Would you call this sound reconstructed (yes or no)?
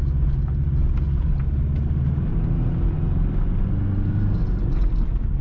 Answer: no